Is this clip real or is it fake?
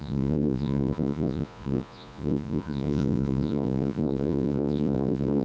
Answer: fake